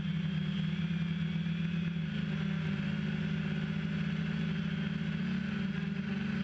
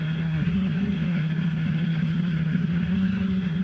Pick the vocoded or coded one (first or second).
second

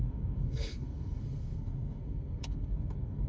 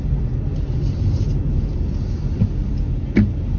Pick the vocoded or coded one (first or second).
first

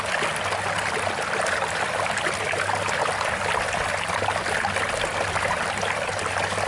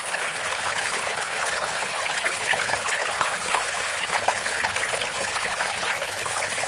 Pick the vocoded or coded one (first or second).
second